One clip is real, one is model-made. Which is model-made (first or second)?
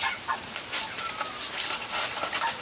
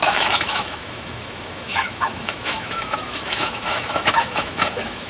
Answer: second